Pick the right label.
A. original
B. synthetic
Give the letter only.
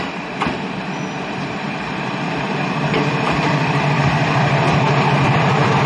A